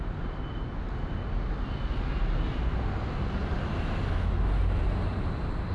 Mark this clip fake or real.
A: real